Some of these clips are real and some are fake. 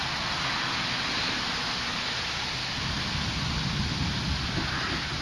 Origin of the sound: real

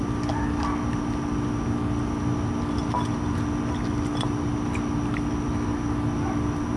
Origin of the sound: real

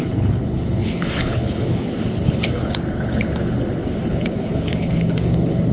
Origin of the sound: fake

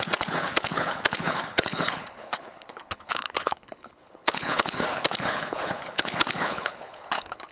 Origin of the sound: fake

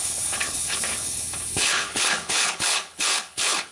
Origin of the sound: fake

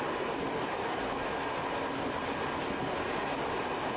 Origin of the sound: real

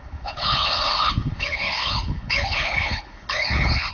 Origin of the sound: fake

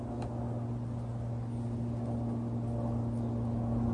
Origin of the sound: real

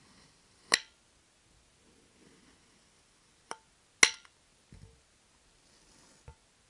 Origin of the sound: real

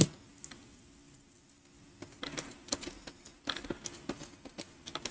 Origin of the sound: real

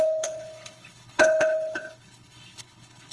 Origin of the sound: fake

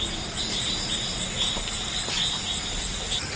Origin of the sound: real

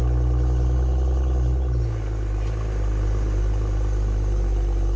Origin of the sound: real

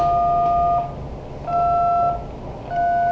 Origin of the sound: real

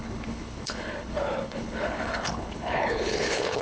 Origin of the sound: fake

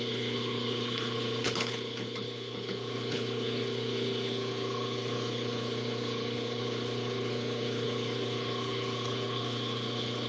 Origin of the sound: fake